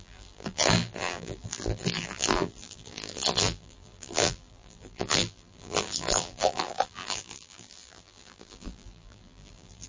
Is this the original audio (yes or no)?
no